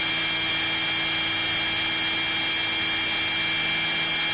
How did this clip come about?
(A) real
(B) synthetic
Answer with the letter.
A